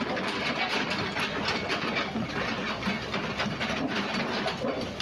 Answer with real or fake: real